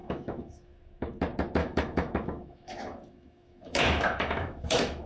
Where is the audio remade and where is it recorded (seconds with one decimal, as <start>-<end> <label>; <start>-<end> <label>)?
0.0-1.2 remade; 1.2-1.6 recorded; 1.6-5.1 remade

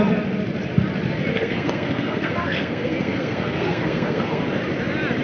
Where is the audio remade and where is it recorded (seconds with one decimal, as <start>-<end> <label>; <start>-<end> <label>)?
0.0-1.3 recorded; 1.3-4.4 remade; 4.4-5.2 recorded

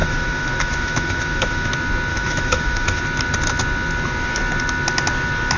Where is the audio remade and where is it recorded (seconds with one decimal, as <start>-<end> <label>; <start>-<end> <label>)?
0.0-1.7 remade; 1.7-2.1 recorded; 2.1-3.0 remade; 3.0-5.6 recorded

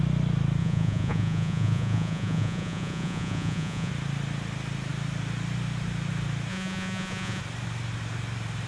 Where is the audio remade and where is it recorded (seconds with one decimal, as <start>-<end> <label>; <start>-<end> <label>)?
0.0-0.6 recorded; 0.6-3.9 remade; 3.9-6.5 recorded; 6.5-7.4 remade; 7.4-8.7 recorded

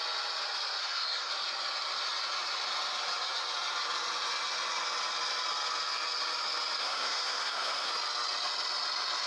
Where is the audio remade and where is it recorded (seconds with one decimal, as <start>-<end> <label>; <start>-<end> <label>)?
0.0-0.8 recorded; 0.8-1.3 remade; 1.3-6.8 recorded; 6.8-7.9 remade; 7.9-9.3 recorded

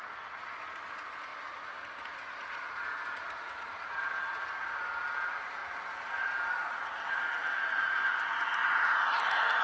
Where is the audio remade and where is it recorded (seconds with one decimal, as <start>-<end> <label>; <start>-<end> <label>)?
0.0-9.6 remade

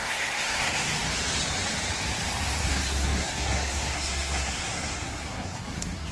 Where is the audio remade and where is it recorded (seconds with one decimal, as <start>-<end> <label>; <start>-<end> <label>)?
0.0-0.9 remade; 0.9-2.6 recorded; 2.6-6.1 remade

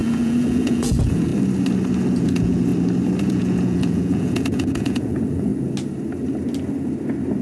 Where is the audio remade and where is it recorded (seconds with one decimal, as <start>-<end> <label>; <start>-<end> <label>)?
0.0-1.3 remade; 1.3-2.2 recorded; 2.2-2.7 remade; 2.7-3.2 recorded; 3.2-5.5 remade; 5.5-7.4 recorded